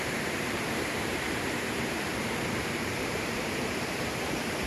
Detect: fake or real fake